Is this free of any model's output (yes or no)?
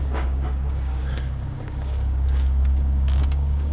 no